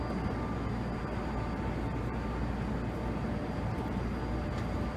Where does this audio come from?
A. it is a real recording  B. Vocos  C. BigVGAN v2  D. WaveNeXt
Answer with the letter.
A